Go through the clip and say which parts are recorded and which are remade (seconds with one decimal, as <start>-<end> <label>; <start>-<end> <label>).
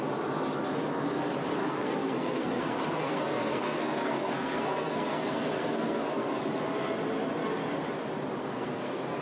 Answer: 0.0-1.6 recorded; 1.6-6.4 remade; 6.4-8.4 recorded; 8.4-9.2 remade